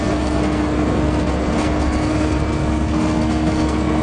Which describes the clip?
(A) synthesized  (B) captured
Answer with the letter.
A